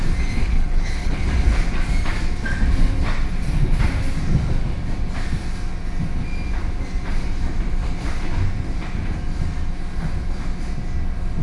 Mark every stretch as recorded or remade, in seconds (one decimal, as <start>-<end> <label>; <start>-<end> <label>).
0.0-0.4 recorded; 0.4-1.2 remade; 1.2-11.4 recorded